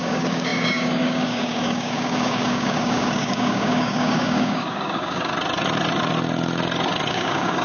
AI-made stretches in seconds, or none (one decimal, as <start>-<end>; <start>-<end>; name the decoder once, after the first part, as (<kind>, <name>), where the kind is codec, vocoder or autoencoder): 0.0-5.3 (codec, DAC); 7.1-7.6